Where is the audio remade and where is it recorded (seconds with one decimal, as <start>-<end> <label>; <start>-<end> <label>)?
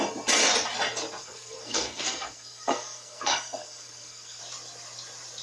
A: 0.0-1.2 recorded; 1.2-4.4 remade; 4.4-5.4 recorded